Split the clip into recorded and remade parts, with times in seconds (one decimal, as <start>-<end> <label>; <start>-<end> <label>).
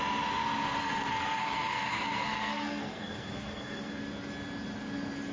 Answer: 0.0-0.8 recorded; 0.8-4.0 remade; 4.0-5.3 recorded